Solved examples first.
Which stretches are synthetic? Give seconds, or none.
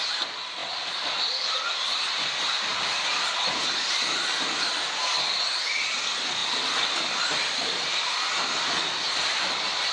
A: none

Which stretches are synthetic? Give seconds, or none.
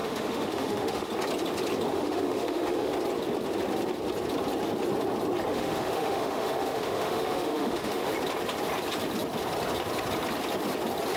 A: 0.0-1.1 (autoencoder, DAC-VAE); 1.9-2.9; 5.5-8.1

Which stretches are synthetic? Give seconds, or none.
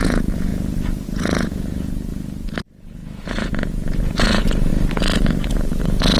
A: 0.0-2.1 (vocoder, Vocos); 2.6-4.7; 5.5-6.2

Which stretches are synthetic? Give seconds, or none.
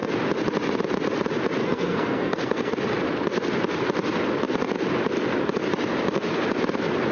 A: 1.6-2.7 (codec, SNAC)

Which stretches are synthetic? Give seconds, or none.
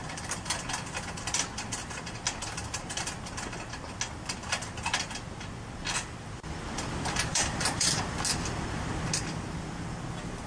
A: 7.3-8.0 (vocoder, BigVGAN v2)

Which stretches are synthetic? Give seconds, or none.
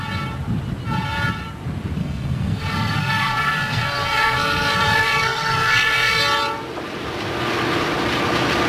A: 2.0-6.2 (codec, SNAC)